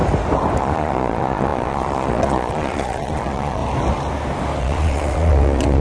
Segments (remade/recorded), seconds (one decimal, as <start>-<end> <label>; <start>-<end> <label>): 0.0-0.6 recorded; 0.6-3.6 remade; 3.6-4.6 recorded; 4.6-5.8 remade